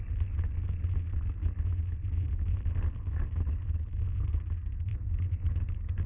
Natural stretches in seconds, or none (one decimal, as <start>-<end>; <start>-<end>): 0.0-4.9

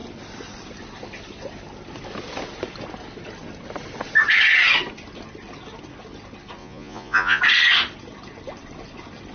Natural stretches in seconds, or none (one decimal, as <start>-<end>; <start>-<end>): 0.0-6.6; 7.4-9.3

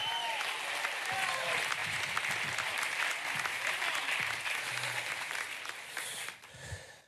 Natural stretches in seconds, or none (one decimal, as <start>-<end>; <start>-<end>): 0.0-7.1

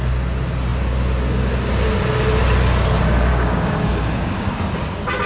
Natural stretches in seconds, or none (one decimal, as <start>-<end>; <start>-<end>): 0.0-3.3; 4.5-5.3

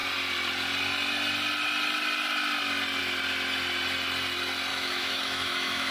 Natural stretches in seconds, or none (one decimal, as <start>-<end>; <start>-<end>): 0.0-4.7

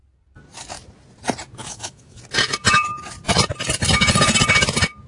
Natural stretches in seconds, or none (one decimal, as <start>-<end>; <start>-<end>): 0.0-1.6; 2.2-5.1

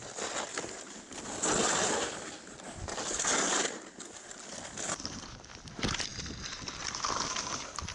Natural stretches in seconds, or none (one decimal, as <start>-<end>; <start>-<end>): 0.0-7.9